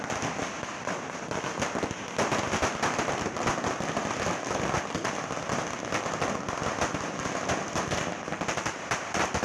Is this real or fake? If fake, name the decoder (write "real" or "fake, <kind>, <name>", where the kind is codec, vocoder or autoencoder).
real